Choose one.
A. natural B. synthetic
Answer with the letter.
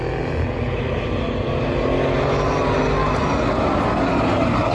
A